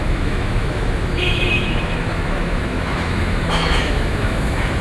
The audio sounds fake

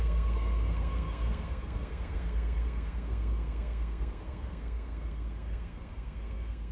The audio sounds fake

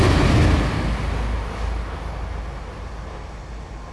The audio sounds real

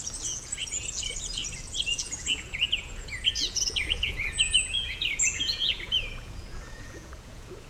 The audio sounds fake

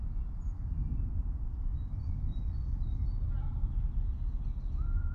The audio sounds real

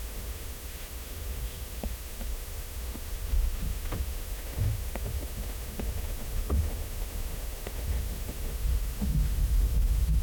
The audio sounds fake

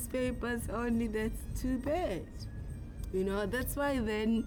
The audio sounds real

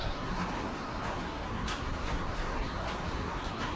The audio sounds fake